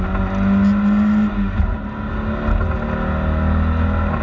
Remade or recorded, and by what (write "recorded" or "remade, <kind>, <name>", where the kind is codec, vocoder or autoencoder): recorded